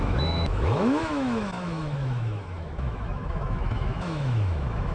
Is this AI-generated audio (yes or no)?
yes